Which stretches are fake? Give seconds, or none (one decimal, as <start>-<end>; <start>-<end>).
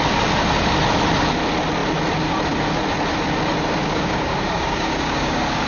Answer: 3.8-5.7